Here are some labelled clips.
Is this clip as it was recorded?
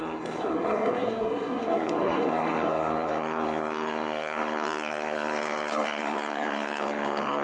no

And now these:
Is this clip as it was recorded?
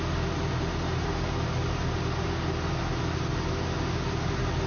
yes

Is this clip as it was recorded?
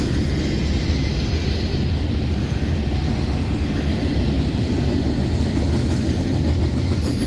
yes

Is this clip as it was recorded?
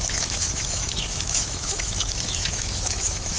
no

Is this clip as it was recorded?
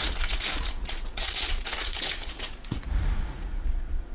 no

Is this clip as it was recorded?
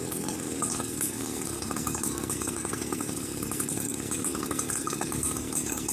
no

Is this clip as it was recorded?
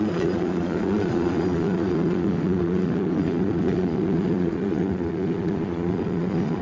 no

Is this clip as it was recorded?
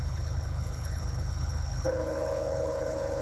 no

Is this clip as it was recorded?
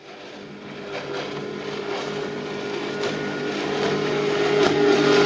yes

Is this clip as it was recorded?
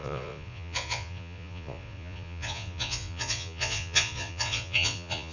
no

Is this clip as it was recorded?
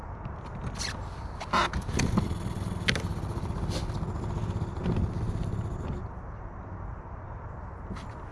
yes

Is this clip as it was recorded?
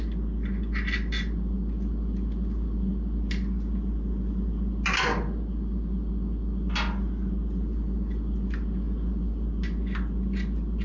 yes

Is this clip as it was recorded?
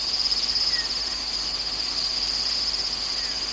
yes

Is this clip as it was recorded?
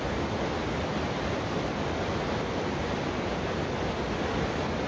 yes